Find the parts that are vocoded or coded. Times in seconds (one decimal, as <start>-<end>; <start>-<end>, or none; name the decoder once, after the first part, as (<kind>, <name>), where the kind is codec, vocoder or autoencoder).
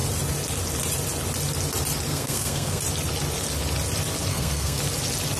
2.1-2.8 (codec, SNAC); 4.3-4.8